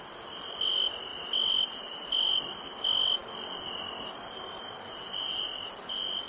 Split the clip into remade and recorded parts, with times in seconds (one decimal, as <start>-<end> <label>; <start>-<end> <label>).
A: 0.0-6.3 recorded